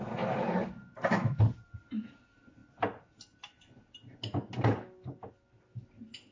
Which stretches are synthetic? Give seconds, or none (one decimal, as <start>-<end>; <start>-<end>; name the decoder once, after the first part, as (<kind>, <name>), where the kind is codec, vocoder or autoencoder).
none